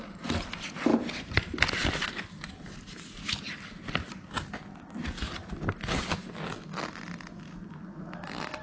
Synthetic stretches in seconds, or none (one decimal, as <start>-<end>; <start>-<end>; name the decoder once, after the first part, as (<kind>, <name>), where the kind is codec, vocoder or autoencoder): 0.9-2.1 (vocoder, BigVGAN v2)